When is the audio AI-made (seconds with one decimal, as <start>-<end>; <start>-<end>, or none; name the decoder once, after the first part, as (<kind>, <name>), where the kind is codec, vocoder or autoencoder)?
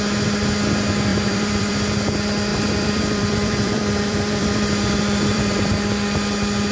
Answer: 1.1-1.7 (vocoder, BigVGAN v2); 2.5-5.7